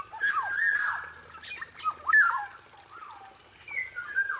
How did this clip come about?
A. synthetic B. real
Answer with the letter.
B